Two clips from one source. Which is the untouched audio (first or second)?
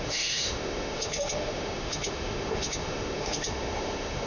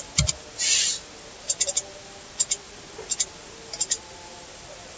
second